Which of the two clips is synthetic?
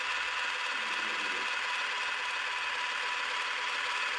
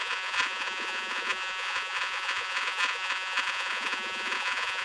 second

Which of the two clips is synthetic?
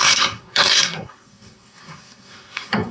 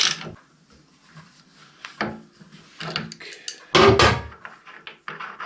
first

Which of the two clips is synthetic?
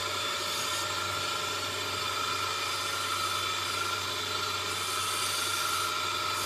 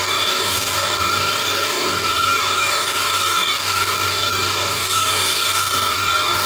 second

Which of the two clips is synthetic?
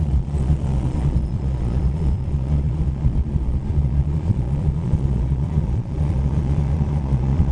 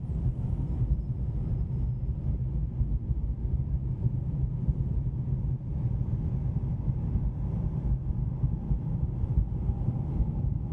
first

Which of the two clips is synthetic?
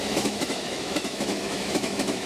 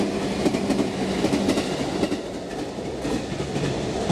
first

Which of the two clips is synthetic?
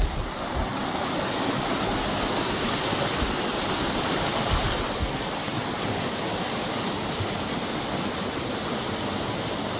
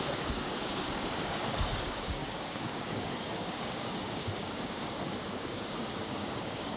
second